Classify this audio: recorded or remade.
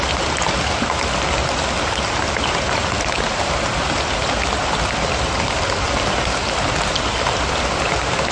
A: recorded